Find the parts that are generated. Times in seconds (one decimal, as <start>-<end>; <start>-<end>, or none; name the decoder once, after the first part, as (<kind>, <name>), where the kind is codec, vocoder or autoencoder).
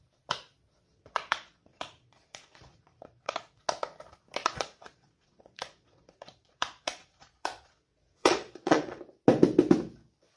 0.9-3.6 (vocoder, Vocos); 4.4-9.0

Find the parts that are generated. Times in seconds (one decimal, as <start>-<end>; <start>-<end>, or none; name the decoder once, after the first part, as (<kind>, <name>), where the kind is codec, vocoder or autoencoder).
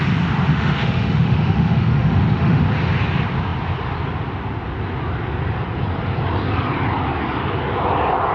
0.5-2.6 (autoencoder, DAC-VAE)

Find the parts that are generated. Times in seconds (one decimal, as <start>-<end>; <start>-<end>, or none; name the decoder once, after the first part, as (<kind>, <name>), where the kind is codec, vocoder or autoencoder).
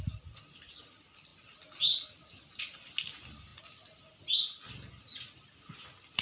0.0-1.3 (vocoder, BigVGAN v2); 2.6-3.5; 4.9-6.2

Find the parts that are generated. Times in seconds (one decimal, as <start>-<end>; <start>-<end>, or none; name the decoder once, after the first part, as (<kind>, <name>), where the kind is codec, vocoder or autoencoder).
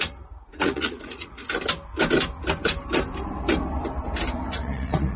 0.0-1.4 (vocoder, Vocos); 4.5-5.2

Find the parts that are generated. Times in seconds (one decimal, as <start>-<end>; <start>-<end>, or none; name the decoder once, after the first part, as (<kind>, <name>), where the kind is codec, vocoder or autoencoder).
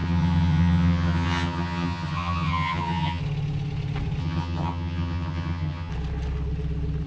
0.0-3.2 (vocoder, HiFi-GAN); 4.2-5.9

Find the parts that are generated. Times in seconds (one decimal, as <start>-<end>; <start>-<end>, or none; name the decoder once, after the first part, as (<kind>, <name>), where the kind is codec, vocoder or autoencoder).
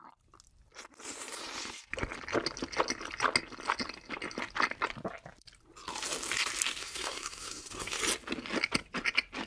6.8-8.0 (codec, SNAC)